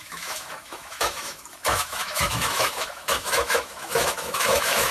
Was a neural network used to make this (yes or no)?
yes